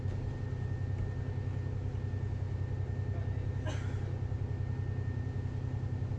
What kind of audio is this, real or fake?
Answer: real